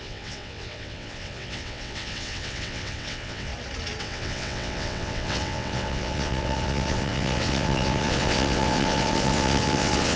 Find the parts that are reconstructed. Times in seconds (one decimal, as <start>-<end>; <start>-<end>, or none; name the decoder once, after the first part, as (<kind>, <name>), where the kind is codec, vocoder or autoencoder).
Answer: 0.0-3.5 (vocoder, WaveNeXt); 4.0-10.2

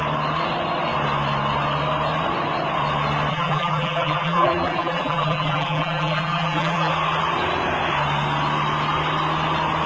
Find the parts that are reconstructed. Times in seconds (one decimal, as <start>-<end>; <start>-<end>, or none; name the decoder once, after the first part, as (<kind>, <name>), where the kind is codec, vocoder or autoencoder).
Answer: 3.3-6.9 (vocoder, BigVGAN v2)

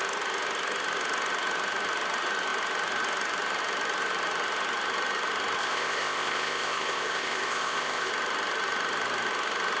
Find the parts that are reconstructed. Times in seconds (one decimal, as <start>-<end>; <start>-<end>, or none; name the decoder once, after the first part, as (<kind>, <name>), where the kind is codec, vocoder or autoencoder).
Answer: 5.6-8.1 (codec, ZipCodec)

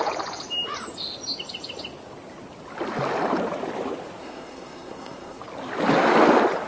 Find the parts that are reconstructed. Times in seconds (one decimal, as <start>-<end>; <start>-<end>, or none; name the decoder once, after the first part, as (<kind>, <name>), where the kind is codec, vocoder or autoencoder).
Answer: 4.2-5.4 (codec, SNAC)

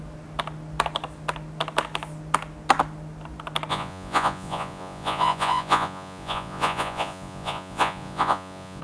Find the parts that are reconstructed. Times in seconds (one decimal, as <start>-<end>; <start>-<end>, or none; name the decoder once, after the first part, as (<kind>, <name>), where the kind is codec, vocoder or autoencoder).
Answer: 3.7-8.8 (vocoder, Vocos)

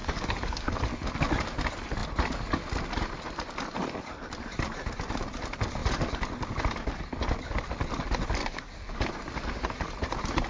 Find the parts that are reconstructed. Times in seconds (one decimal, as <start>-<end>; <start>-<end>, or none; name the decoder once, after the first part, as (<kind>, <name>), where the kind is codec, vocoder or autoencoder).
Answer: 0.0-0.7 (codec, DAC); 8.4-9.1

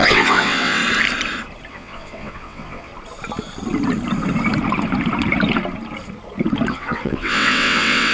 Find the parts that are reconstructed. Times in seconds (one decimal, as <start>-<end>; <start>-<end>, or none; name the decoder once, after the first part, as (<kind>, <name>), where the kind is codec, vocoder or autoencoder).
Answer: 0.0-0.8 (vocoder, WaveNeXt); 1.7-2.9; 6.7-8.1

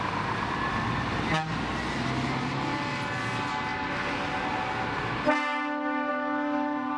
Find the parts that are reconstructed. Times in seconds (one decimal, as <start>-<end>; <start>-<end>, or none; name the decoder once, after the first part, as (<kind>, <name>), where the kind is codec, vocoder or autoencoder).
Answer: none